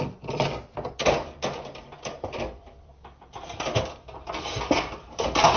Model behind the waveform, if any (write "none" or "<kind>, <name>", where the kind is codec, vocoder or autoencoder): vocoder, BigVGAN v2